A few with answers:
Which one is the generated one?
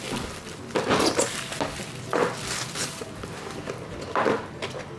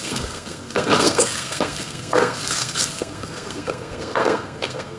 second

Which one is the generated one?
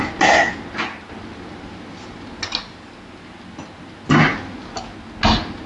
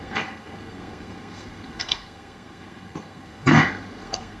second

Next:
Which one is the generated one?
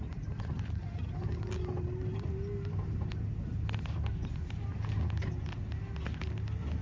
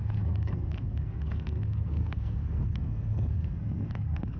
second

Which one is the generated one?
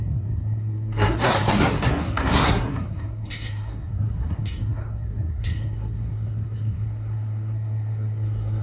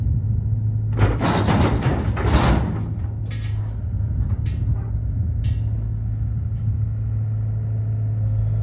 first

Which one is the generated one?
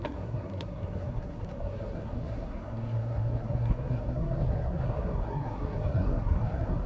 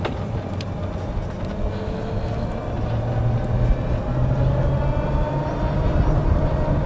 first